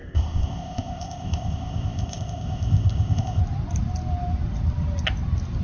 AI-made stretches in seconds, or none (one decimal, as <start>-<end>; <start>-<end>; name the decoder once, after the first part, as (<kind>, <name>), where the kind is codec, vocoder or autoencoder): 0.0-3.4 (codec, ZipCodec)